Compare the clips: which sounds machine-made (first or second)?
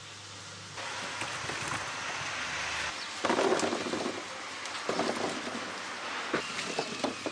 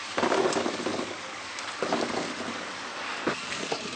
second